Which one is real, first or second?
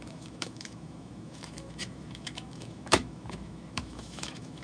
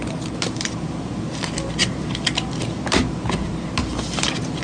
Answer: second